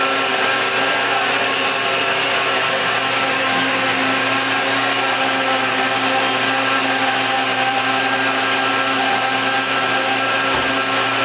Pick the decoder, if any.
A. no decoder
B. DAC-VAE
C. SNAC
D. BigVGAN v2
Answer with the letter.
A